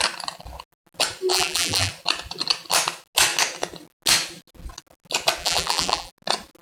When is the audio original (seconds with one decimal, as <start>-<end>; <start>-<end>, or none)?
0.0-1.3; 1.9-5.4; 6.1-6.6